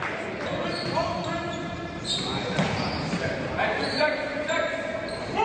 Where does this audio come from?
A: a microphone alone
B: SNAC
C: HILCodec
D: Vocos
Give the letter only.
A